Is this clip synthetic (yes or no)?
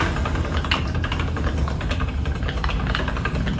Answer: no